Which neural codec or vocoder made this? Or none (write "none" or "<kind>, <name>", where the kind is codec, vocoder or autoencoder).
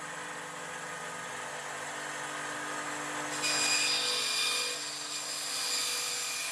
none